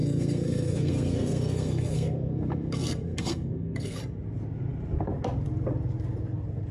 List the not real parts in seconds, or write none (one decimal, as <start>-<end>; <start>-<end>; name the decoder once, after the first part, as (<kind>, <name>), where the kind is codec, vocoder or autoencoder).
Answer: 0.0-4.0 (codec, SNAC)